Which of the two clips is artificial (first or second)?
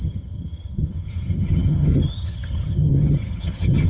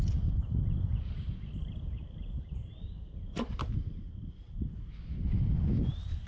first